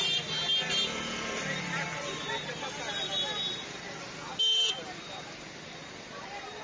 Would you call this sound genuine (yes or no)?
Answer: yes